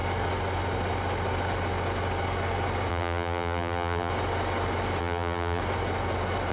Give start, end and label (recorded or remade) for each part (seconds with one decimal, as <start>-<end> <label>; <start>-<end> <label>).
0.0-2.9 recorded; 2.9-4.1 remade; 4.1-5.0 recorded; 5.0-5.6 remade; 5.6-6.5 recorded